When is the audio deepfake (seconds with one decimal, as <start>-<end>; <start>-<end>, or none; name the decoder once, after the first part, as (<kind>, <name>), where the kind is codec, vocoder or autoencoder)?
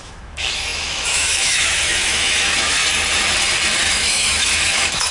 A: 0.0-2.8 (autoencoder, DAC-VAE); 3.8-5.1